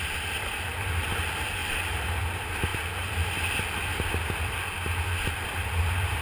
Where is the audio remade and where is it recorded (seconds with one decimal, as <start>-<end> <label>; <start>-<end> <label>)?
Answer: 0.0-1.6 recorded; 1.6-2.2 remade; 2.2-6.2 recorded